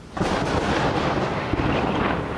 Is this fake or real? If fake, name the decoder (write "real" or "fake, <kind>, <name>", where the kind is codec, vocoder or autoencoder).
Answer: real